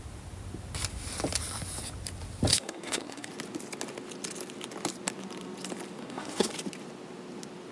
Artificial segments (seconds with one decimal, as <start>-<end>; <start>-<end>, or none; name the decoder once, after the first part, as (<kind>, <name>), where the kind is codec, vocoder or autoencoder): 2.5-3.3 (codec, SNAC); 6.0-6.5